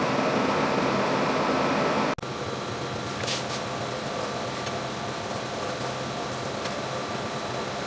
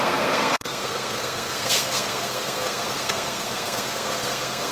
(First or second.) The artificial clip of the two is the second